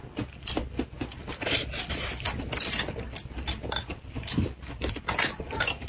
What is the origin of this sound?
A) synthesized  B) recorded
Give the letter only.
B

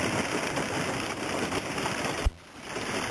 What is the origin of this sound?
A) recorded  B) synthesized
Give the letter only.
A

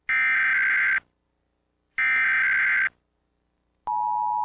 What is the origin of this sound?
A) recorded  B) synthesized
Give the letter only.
A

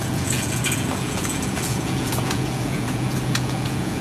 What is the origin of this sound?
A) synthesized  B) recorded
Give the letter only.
A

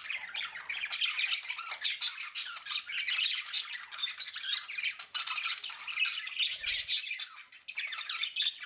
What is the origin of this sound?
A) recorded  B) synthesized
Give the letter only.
A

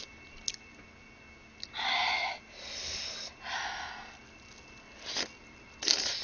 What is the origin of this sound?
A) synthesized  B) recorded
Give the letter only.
B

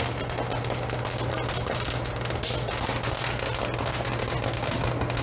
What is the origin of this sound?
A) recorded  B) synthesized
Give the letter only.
A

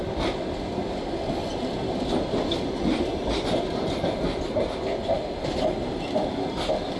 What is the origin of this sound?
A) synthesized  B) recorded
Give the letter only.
B